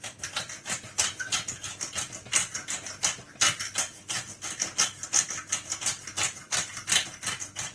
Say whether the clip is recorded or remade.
recorded